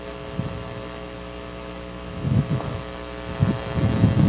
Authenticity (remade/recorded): remade